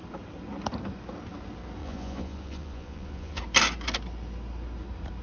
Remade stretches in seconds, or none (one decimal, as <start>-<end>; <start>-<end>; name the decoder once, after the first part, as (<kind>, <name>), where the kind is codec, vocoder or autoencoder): 1.8-3.4 (vocoder, Vocos)

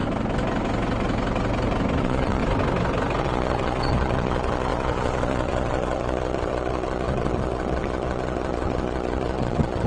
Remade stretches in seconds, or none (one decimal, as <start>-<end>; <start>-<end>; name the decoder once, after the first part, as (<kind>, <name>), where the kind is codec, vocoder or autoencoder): 2.0-2.4 (vocoder, Vocos); 3.2-9.9

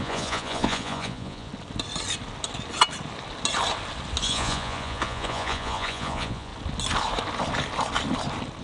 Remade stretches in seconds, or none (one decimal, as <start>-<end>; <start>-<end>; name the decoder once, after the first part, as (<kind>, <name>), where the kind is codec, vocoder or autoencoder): 0.0-1.5 (vocoder, Vocos); 4.2-6.5

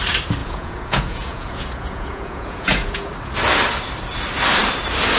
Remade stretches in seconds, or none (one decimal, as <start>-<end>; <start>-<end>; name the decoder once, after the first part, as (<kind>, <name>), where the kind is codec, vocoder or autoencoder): 0.4-3.1 (vocoder, Vocos)